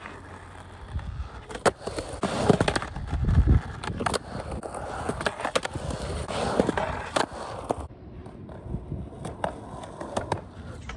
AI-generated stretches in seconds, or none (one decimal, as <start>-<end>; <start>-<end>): none